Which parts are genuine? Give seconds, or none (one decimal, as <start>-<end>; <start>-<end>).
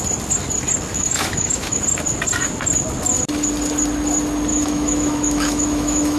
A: 0.0-0.9; 1.8-4.5